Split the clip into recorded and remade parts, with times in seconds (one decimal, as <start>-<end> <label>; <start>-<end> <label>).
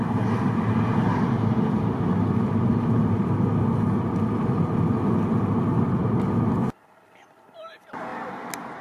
0.0-8.8 recorded